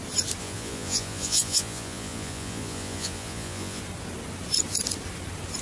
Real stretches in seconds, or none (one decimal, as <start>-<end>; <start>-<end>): 0.0-0.4; 3.8-5.6